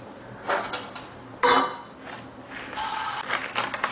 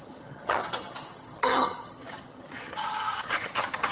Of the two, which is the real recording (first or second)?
first